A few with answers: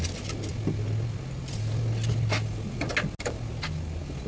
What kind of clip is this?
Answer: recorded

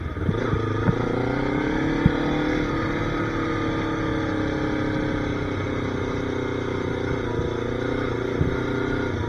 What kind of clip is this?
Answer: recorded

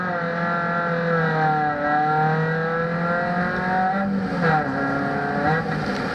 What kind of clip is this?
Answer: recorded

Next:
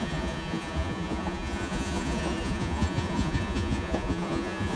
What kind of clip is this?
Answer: remade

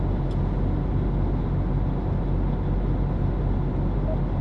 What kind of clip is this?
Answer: recorded